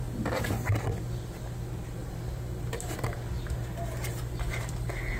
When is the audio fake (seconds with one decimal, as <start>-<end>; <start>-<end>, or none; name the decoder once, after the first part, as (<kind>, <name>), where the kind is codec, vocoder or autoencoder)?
2.0-3.3 (vocoder, BigVGAN v2)